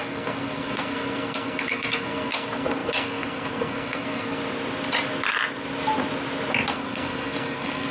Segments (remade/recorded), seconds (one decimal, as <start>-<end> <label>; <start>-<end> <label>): 0.0-4.4 remade; 4.4-6.7 recorded; 6.7-7.9 remade